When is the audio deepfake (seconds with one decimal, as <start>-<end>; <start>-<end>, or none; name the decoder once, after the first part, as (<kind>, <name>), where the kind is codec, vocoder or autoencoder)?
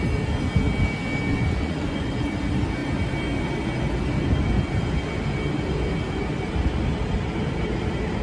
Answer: 1.3-2.4 (vocoder, Vocos)